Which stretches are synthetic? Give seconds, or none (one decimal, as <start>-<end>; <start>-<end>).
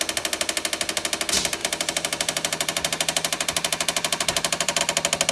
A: 1.6-4.8